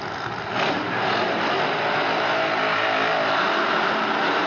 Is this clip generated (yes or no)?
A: no